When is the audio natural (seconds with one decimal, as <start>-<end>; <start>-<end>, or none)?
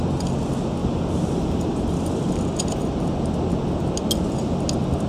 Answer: 0.0-0.8; 2.4-5.1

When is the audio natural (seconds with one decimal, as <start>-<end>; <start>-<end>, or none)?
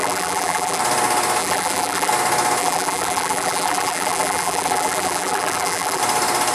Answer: 0.8-1.4; 2.1-2.6; 6.0-6.5